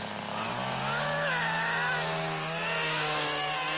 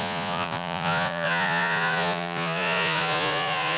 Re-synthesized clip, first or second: second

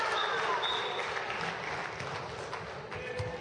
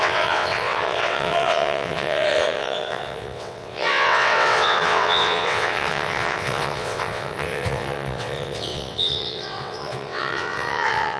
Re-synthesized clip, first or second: second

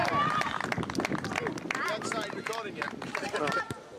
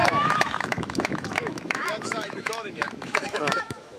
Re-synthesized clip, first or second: second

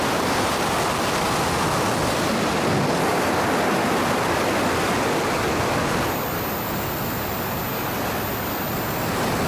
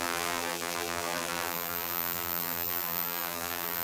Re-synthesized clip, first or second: second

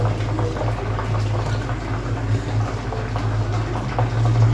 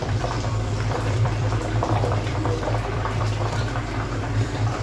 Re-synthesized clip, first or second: second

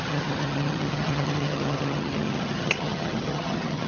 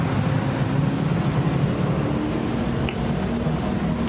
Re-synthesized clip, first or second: first